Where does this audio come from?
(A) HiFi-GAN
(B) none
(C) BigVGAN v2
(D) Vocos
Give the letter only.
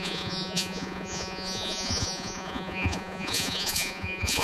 D